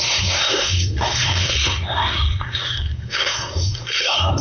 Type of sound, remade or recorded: remade